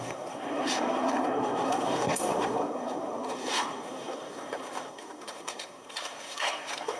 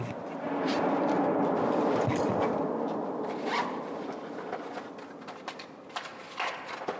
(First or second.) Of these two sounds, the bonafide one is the second